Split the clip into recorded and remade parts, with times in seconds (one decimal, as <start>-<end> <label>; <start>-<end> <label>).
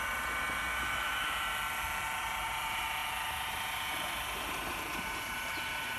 0.0-0.7 recorded; 0.7-1.4 remade; 1.4-6.0 recorded